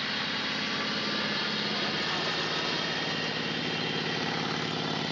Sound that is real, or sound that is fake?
real